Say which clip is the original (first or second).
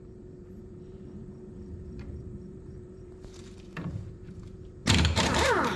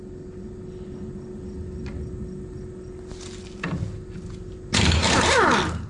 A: second